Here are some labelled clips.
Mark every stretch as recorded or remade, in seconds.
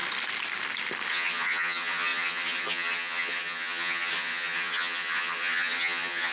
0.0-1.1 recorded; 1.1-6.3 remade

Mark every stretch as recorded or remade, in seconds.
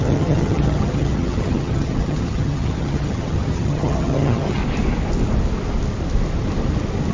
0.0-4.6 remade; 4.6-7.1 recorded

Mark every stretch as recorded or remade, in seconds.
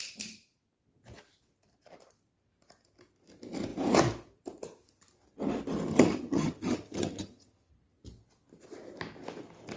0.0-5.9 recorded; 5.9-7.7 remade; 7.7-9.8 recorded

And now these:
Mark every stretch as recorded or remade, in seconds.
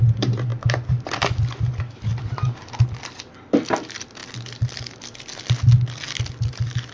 0.0-6.9 recorded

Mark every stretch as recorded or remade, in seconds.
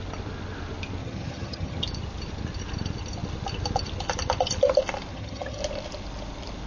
0.0-1.0 recorded; 1.0-1.8 remade; 1.8-5.1 recorded; 5.1-5.6 remade; 5.6-6.7 recorded